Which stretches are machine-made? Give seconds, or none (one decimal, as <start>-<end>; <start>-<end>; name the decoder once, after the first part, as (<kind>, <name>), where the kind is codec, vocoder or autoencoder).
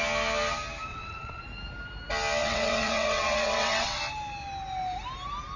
0.9-1.4 (vocoder, WaveNeXt); 2.4-4.0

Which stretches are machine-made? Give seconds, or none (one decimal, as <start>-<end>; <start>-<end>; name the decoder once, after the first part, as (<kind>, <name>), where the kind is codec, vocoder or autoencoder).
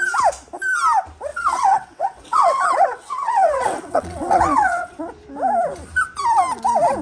1.3-5.0 (vocoder, WaveNeXt)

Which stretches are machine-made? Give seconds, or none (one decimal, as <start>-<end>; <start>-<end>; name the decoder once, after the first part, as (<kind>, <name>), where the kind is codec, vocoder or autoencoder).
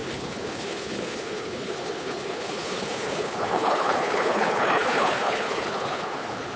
0.0-6.6 (codec, HILCodec)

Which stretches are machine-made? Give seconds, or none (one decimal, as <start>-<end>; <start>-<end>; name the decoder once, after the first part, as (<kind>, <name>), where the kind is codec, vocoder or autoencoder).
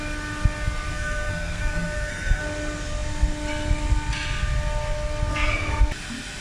0.9-2.4 (codec, SNAC); 5.3-5.8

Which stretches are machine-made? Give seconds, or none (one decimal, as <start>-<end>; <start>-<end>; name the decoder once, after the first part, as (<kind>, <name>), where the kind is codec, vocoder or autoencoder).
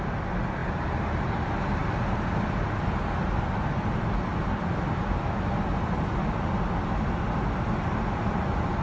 none